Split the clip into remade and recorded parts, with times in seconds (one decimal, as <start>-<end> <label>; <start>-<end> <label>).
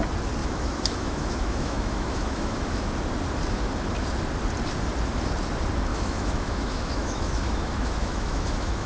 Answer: 0.0-0.4 recorded; 0.4-2.9 remade; 2.9-5.9 recorded; 5.9-8.9 remade